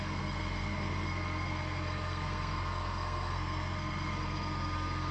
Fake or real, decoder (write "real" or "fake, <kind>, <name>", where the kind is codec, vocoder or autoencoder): fake, codec, SNAC